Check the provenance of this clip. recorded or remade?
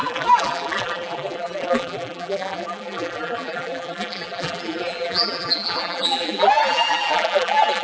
remade